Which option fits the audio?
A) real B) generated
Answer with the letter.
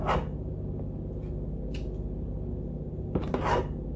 A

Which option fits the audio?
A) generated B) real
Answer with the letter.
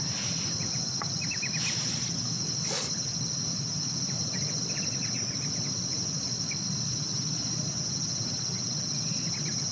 B